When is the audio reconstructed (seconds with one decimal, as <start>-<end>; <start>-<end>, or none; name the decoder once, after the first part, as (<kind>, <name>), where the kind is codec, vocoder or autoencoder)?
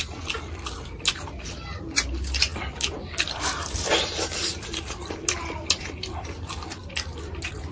none